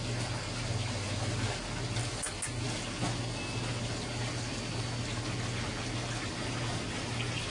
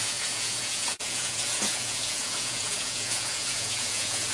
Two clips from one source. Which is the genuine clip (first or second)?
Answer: first